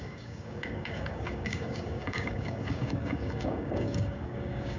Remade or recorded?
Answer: remade